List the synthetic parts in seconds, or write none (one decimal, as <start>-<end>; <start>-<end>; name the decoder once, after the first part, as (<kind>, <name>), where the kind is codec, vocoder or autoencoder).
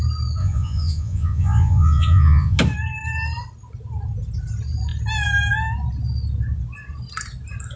0.4-2.6 (vocoder, Vocos)